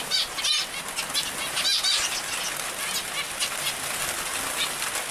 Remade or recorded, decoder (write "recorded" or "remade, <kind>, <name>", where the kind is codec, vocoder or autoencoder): recorded